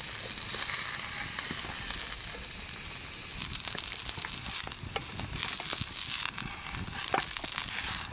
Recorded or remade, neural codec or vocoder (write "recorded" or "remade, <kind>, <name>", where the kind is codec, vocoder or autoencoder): recorded